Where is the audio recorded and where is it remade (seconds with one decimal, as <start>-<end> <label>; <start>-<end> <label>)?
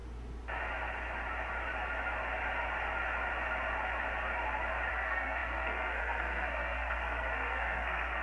0.0-4.9 recorded; 4.9-8.2 remade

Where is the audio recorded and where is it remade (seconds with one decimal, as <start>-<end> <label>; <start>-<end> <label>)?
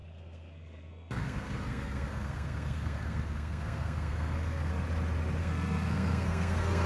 0.0-4.7 remade; 4.7-5.4 recorded; 5.4-6.9 remade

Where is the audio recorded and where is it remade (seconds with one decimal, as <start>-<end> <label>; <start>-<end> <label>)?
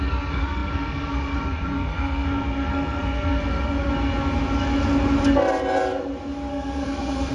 0.0-3.9 remade; 3.9-6.5 recorded; 6.5-7.3 remade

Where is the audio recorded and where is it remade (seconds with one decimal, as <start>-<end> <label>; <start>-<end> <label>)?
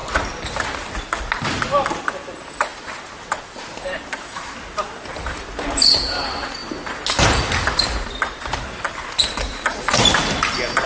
0.0-10.9 recorded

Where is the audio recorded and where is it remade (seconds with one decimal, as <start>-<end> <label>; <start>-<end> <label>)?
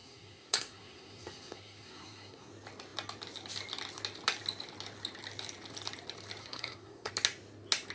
0.0-2.5 remade; 2.5-6.4 recorded; 6.4-7.1 remade; 7.1-7.9 recorded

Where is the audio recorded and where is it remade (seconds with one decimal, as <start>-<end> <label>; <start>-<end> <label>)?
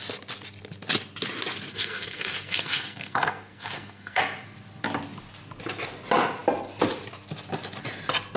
0.0-1.7 recorded; 1.7-4.2 remade; 4.2-8.4 recorded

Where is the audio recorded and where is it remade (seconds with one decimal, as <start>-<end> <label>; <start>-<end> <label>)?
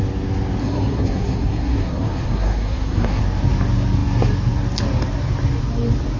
0.0-0.6 recorded; 0.6-3.2 remade; 3.2-6.2 recorded